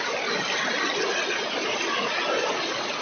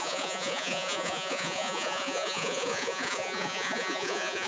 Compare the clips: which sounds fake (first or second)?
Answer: second